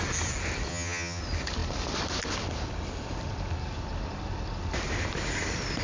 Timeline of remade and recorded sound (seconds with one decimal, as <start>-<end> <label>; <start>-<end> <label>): 0.0-0.7 recorded; 0.7-1.2 remade; 1.2-5.8 recorded